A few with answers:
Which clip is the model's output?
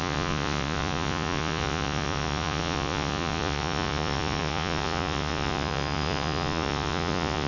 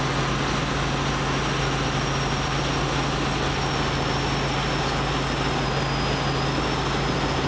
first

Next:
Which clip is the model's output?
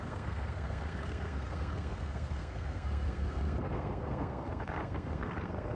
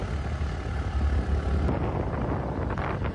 first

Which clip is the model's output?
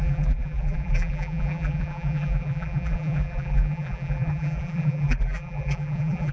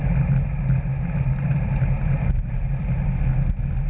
first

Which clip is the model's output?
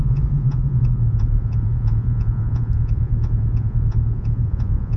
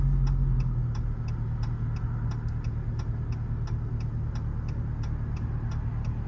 first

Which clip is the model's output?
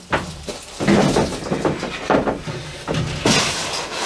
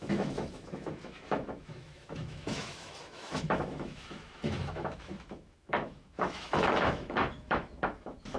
second